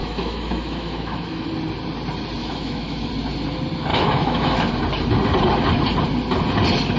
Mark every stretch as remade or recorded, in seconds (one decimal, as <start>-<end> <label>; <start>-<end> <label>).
0.0-1.5 remade; 1.5-2.4 recorded; 2.4-3.1 remade; 3.1-3.9 recorded; 3.9-4.7 remade; 4.7-7.0 recorded